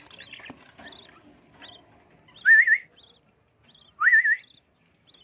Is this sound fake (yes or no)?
no